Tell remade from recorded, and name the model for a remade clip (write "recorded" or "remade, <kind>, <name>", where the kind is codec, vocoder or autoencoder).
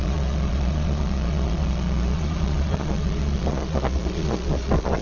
remade, vocoder, Vocos